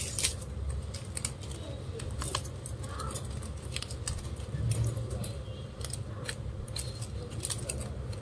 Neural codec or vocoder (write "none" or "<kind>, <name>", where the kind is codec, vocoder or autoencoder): none